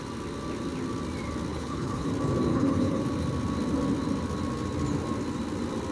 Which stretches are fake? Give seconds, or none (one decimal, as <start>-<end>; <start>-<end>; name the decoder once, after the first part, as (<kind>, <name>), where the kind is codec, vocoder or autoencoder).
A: 1.5-2.1 (codec, HILCodec); 2.5-3.0